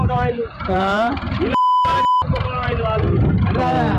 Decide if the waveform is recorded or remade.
remade